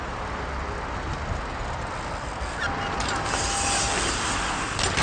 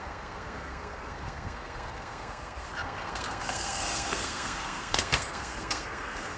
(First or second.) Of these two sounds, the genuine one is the first